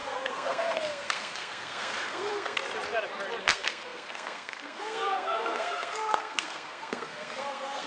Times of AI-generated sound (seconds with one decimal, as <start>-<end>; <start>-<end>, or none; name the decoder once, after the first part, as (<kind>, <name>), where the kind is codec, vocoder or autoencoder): 0.0-2.6 (codec, SNAC); 3.4-7.9